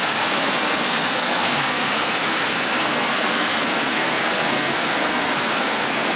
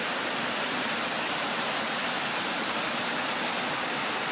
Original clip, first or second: second